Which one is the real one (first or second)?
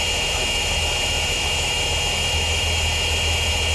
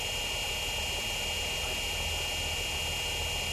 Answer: second